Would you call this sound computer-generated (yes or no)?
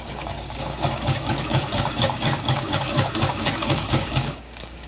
yes